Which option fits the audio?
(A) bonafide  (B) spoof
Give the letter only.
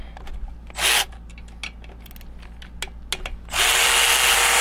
A